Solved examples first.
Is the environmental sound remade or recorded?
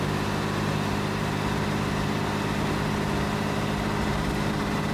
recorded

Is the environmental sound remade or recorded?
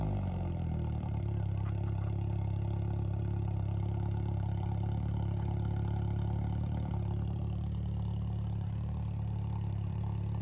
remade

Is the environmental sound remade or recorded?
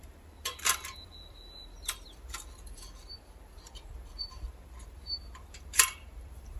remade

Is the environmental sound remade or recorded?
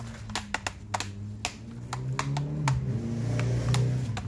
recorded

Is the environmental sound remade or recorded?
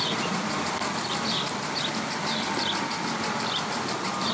remade